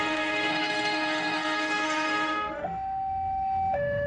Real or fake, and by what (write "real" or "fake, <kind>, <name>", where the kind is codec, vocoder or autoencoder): fake, autoencoder, DAC-VAE